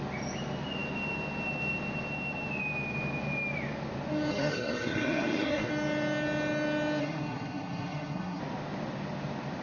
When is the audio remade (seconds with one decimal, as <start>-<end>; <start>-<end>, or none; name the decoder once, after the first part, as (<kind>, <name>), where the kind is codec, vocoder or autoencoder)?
4.3-5.7 (codec, SNAC); 7.0-8.4